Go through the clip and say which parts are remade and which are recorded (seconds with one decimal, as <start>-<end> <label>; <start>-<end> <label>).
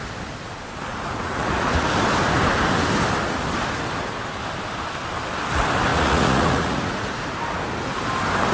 0.0-0.9 recorded; 0.9-1.9 remade; 1.9-5.9 recorded; 5.9-7.2 remade; 7.2-8.5 recorded